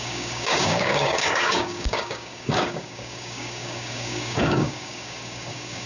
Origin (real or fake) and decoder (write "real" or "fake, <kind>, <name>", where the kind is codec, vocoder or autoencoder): fake, codec, DAC